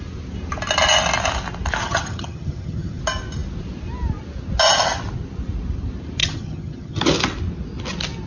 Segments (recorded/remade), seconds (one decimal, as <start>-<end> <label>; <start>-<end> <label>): 0.0-1.8 recorded; 1.8-3.0 remade; 3.0-6.2 recorded; 6.2-7.0 remade; 7.0-8.3 recorded